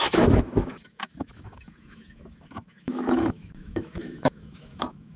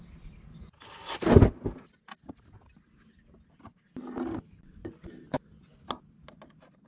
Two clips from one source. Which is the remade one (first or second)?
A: first